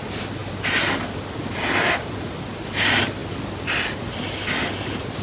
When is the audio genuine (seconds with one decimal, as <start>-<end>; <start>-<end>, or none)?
0.0-5.2